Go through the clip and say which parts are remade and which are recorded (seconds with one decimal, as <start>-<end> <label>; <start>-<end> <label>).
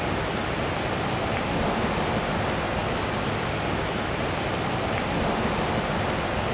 0.0-6.5 recorded